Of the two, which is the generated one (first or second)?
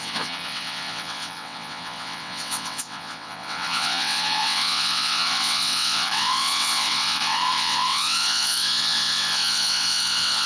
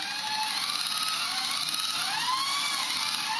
first